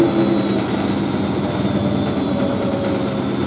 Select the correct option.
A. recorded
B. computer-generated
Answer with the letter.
A